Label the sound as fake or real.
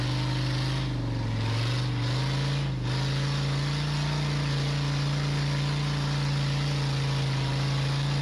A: real